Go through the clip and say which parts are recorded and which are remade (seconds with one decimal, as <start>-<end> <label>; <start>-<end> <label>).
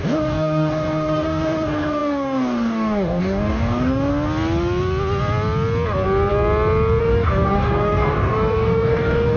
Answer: 0.0-4.1 remade; 4.1-7.0 recorded; 7.0-9.4 remade